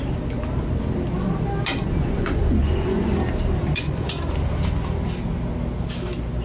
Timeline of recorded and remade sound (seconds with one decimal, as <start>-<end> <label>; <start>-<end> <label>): 0.0-1.7 recorded; 1.7-3.1 remade; 3.1-3.6 recorded; 3.6-4.1 remade; 4.1-6.4 recorded